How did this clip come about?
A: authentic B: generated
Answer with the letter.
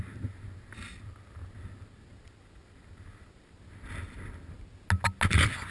A